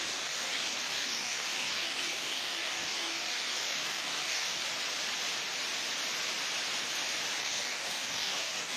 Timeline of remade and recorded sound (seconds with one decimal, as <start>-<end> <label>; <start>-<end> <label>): 0.0-4.6 remade; 4.6-7.4 recorded; 7.4-8.8 remade